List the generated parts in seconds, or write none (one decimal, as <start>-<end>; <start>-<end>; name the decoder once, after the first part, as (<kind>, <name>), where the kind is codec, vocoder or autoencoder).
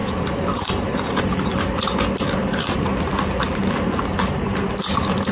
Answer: 0.0-1.6 (vocoder, BigVGAN v2)